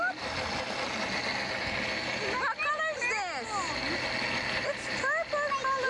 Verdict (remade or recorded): recorded